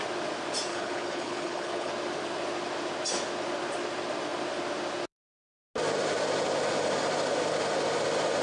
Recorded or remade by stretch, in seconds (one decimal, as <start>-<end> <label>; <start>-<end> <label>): 0.0-0.7 recorded; 0.7-1.9 remade; 1.9-8.4 recorded